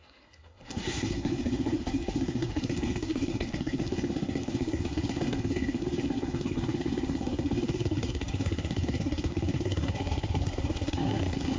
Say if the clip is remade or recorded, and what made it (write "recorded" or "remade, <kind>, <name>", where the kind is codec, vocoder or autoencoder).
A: remade, codec, SNAC